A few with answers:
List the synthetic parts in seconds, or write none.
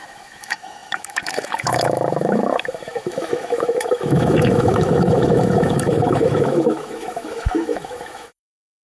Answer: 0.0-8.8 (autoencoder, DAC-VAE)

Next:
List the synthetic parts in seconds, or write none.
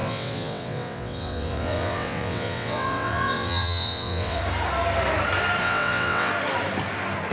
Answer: 0.0-4.4 (vocoder, WaveNeXt); 5.6-6.3